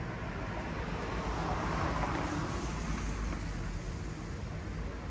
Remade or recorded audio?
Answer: recorded